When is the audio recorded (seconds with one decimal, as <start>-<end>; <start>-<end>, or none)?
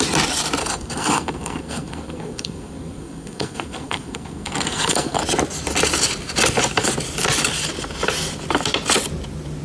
0.0-0.6; 5.2-9.6